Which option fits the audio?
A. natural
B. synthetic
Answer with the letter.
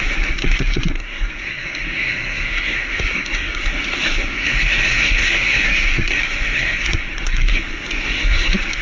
B